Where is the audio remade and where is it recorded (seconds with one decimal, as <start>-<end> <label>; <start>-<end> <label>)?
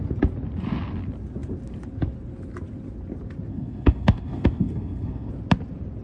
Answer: 0.0-3.5 recorded; 3.5-5.3 remade; 5.3-6.0 recorded